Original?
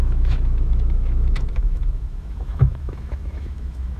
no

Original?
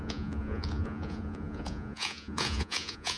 no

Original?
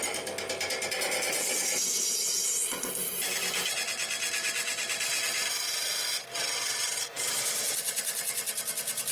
yes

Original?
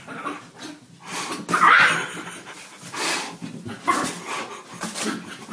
yes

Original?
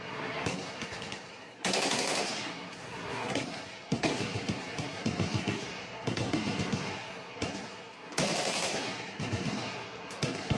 no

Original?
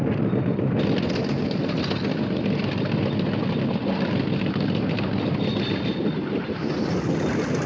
yes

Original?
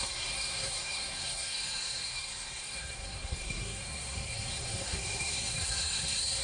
no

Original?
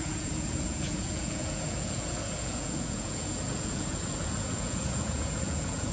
no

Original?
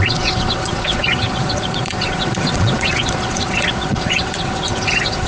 no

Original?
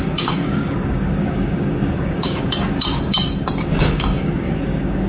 no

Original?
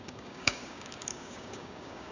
no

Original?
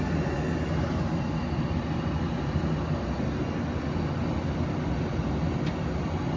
yes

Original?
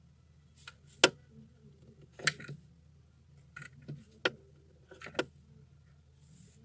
yes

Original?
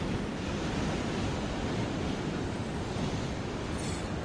yes